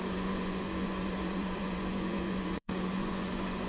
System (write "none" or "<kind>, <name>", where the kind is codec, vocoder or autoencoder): vocoder, Vocos